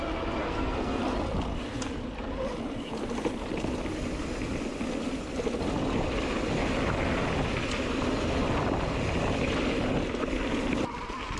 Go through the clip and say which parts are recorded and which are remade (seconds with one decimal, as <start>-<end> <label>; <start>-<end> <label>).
0.0-0.4 recorded; 0.4-1.0 remade; 1.0-11.4 recorded